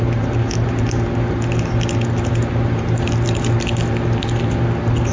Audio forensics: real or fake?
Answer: real